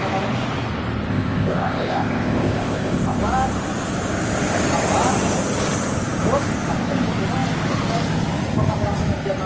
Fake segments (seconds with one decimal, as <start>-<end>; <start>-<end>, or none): 1.1-3.2